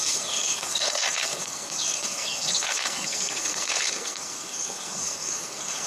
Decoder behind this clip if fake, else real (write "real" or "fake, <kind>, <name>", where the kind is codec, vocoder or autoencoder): fake, codec, SNAC